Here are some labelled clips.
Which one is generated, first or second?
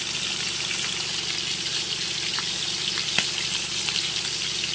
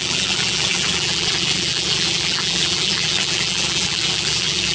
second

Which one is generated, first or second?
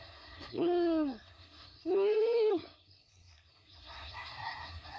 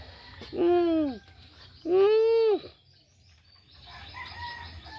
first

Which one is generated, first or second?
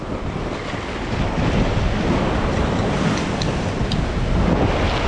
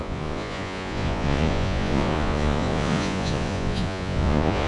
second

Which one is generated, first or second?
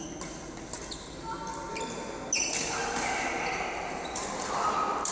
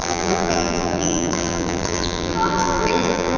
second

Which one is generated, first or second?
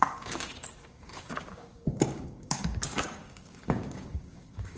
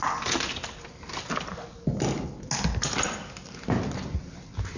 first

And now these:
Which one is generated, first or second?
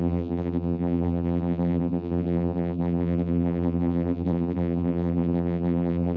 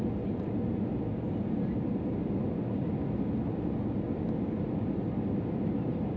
first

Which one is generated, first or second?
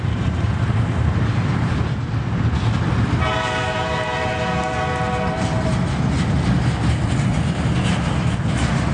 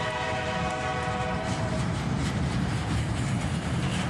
second